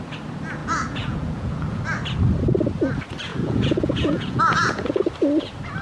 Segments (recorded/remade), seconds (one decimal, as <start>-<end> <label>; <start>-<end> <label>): 0.0-0.6 recorded; 0.6-1.8 remade; 1.8-3.3 recorded; 3.3-5.0 remade; 5.0-5.8 recorded